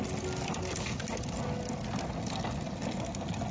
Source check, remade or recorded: recorded